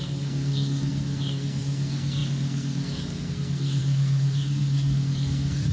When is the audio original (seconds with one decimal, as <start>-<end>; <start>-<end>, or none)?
none